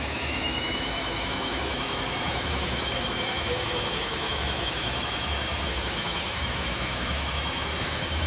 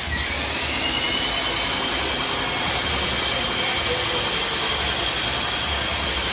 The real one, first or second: second